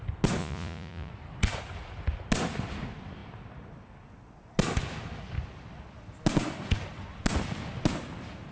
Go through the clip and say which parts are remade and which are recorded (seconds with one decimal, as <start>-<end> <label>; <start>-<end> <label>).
0.0-0.4 recorded; 0.4-1.1 remade; 1.1-8.5 recorded